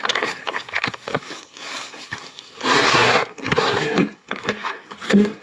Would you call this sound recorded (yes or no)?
no